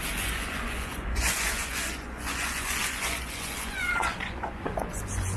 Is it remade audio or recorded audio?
remade